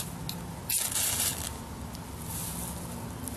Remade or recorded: recorded